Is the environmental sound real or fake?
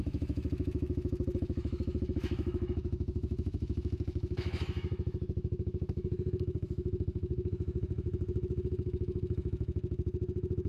fake